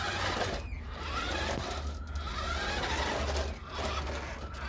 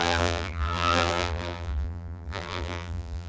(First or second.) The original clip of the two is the first